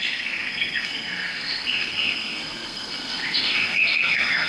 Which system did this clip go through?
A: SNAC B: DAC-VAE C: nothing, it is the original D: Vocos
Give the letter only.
A